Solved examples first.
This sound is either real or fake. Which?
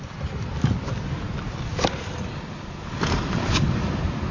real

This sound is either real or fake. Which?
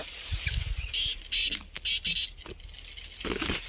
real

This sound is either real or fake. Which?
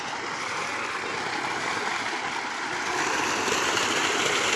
real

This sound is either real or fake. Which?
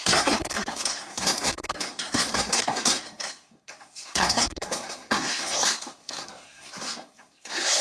fake